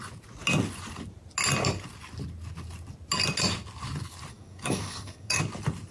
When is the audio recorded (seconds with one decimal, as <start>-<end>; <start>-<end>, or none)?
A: 0.0-4.3; 5.4-5.9